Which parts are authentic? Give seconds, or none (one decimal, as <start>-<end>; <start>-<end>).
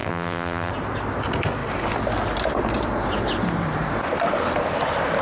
0.7-5.2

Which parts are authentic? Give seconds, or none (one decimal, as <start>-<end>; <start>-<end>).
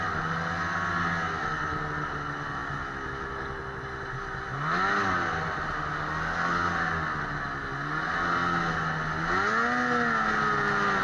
0.0-11.0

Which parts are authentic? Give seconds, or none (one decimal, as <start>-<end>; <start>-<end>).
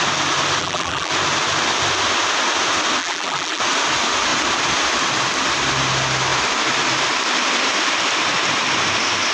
0.0-0.6; 1.1-3.0; 3.6-9.3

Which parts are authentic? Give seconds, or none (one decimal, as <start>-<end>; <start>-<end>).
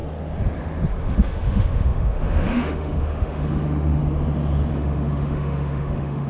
0.0-1.0; 4.0-4.7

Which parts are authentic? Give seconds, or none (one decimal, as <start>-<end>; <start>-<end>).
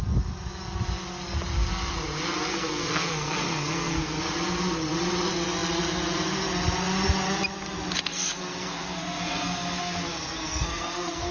0.0-2.5; 4.2-8.1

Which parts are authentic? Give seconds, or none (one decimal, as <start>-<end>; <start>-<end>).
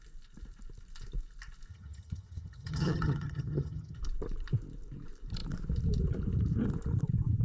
0.0-1.7; 4.0-7.4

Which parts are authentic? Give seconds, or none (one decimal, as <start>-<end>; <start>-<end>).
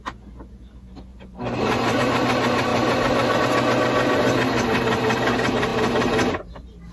0.0-1.1; 2.0-2.7; 3.4-6.9